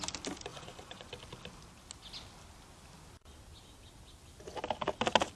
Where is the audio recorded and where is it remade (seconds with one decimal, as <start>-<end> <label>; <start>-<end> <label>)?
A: 0.0-0.5 recorded; 0.5-1.1 remade; 1.1-5.4 recorded